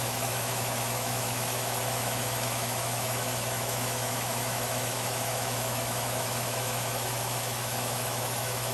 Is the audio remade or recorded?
remade